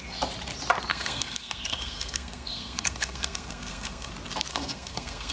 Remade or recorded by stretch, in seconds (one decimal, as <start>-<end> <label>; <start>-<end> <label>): 0.0-0.9 recorded; 0.9-4.1 remade; 4.1-4.5 recorded; 4.5-5.3 remade